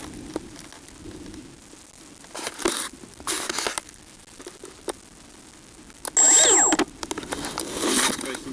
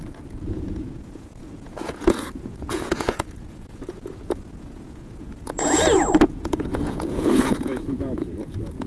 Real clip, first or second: first